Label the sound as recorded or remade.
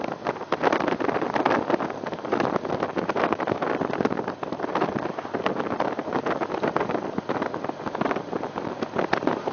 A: recorded